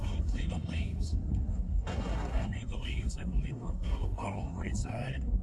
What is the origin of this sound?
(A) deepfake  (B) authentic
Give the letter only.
A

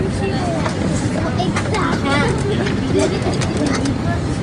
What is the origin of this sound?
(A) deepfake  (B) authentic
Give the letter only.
B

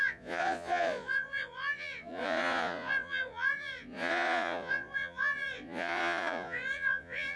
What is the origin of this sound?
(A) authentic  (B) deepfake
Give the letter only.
B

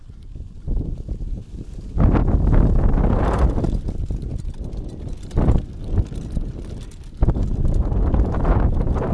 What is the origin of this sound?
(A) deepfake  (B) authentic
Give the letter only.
B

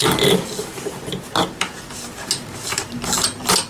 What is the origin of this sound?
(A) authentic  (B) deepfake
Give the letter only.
A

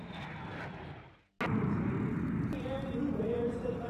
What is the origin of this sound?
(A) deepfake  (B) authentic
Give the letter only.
B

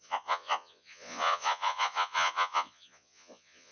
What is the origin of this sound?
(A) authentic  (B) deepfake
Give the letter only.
B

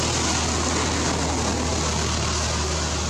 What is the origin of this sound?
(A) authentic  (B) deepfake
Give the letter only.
A